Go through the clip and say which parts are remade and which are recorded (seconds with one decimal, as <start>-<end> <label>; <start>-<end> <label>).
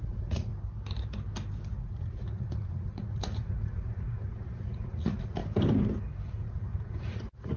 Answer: 0.0-0.5 remade; 0.5-1.8 recorded; 1.8-5.4 remade; 5.4-6.3 recorded; 6.3-7.6 remade